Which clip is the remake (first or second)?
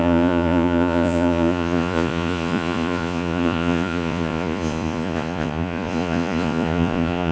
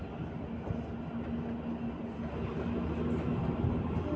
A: first